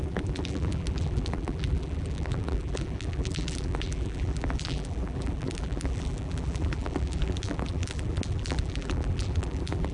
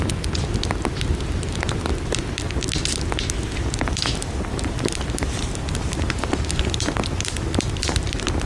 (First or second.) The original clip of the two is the second